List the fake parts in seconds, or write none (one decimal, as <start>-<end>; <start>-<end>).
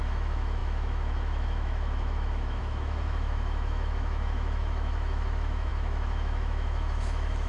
0.0-7.5